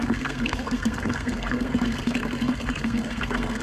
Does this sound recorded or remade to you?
remade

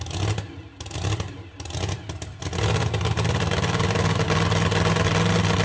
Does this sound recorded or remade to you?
recorded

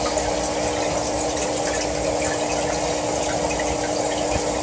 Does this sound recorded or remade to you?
recorded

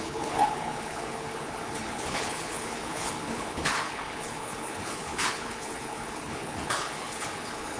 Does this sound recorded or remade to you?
remade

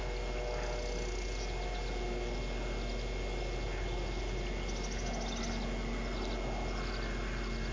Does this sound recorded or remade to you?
recorded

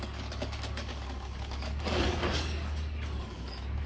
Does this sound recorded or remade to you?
remade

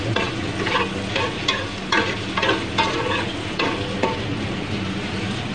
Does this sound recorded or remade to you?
recorded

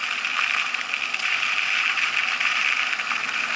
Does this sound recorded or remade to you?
recorded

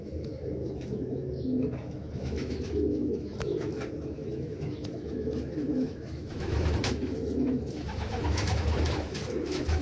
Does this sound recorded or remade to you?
remade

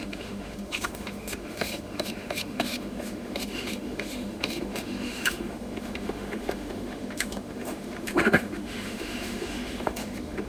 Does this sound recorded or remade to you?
remade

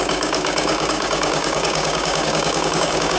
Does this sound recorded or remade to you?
remade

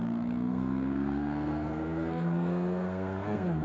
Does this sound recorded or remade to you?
remade